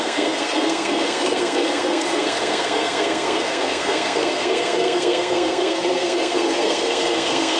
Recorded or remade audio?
remade